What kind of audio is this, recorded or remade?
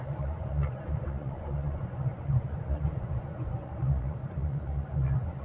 remade